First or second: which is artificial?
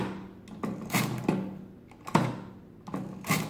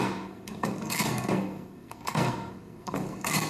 second